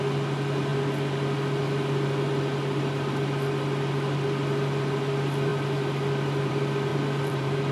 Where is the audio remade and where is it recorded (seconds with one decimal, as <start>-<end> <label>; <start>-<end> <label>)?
0.0-6.9 recorded; 6.9-7.7 remade